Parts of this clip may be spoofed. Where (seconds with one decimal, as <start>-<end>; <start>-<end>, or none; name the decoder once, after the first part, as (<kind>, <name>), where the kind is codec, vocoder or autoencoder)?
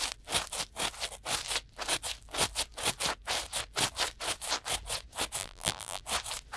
5.4-6.0 (vocoder, BigVGAN v2)